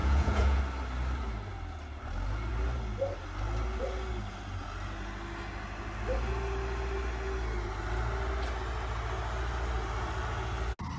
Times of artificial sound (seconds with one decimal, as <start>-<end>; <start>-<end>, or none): 0.0-0.6